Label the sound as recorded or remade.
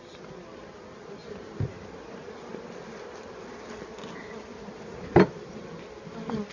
recorded